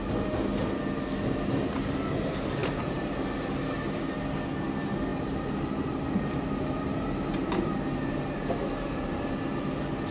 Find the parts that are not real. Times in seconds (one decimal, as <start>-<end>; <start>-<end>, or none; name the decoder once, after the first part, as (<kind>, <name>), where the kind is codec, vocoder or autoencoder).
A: 2.6-4.0 (vocoder, BigVGAN v2); 5.1-9.7